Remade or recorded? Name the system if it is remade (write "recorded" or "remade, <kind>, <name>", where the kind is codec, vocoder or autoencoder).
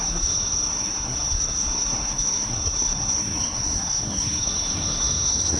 remade, codec, SNAC